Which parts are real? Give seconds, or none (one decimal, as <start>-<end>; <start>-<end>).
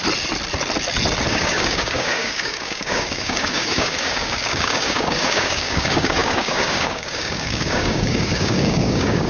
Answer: 0.0-1.3